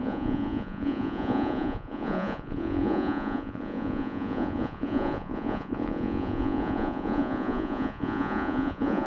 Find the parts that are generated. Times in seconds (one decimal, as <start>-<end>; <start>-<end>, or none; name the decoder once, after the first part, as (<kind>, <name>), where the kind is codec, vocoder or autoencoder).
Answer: 0.0-9.1 (vocoder, Vocos)